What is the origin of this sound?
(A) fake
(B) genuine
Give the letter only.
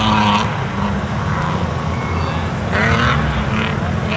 B